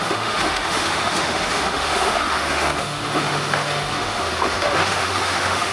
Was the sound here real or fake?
fake